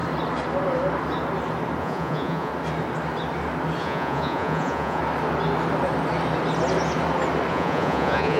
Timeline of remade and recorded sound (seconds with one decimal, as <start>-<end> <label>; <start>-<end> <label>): 0.0-1.8 recorded; 1.8-2.5 remade; 2.5-3.8 recorded; 3.8-5.0 remade; 5.0-7.5 recorded; 7.5-8.4 remade